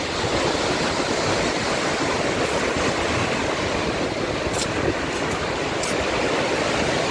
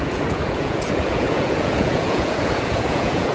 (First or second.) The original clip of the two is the first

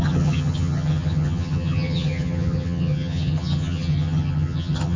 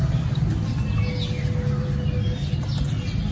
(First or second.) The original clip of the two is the second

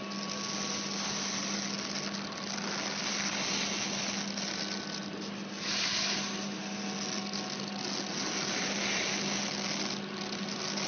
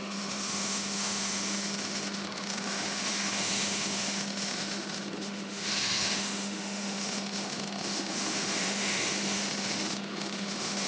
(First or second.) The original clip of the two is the first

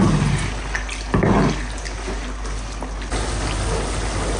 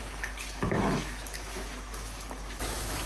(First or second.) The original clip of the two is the first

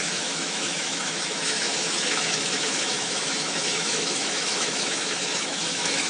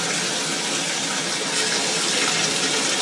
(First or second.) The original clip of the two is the second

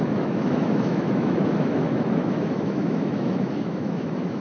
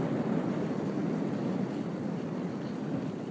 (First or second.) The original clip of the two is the second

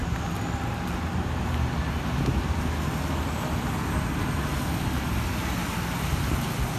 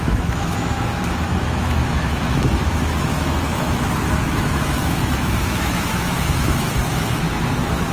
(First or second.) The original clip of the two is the first